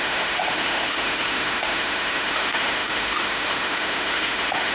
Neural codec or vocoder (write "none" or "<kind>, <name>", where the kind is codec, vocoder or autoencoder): autoencoder, DAC-VAE